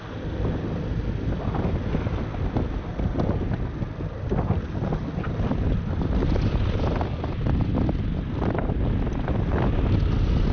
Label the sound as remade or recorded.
recorded